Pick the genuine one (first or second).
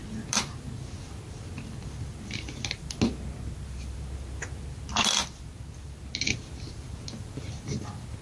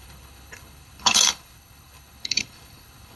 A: first